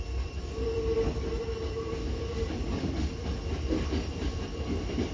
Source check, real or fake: fake